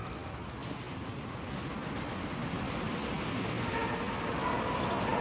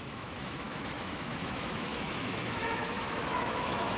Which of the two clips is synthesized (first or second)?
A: second